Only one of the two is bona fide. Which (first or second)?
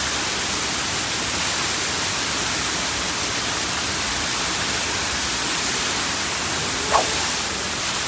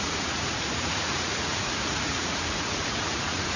first